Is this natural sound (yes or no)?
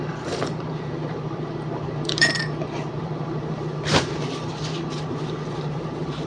no